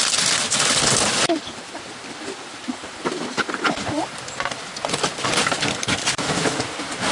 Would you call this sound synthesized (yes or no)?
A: yes